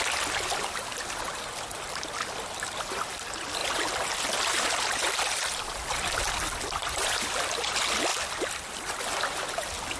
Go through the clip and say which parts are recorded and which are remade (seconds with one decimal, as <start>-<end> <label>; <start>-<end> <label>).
0.0-6.8 recorded; 6.8-7.4 remade; 7.4-10.0 recorded